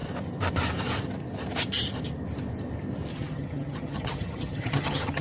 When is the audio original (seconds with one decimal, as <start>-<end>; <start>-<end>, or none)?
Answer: 0.0-3.1